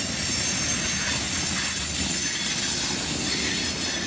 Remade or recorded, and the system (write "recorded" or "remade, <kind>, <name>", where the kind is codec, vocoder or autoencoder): recorded